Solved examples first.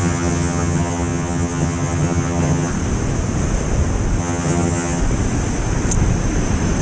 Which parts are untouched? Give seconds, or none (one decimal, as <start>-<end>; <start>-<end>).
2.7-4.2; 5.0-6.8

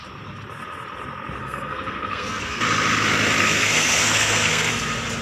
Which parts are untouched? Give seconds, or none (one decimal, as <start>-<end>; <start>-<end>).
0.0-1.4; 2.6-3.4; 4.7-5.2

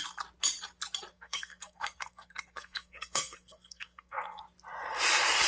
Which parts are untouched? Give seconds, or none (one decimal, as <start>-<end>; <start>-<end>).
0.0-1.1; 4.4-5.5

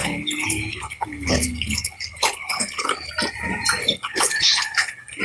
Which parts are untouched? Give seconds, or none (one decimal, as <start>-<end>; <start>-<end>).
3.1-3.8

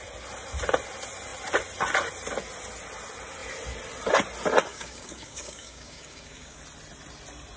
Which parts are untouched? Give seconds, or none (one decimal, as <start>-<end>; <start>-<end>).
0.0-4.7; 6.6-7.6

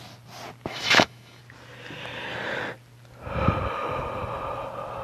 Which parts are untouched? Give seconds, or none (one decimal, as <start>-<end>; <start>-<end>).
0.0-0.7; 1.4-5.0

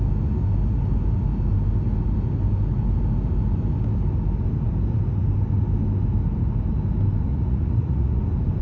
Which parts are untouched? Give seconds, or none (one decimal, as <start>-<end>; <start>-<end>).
0.0-7.3; 8.2-8.6

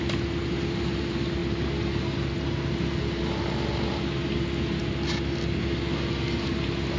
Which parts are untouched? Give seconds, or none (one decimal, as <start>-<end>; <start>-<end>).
0.0-7.0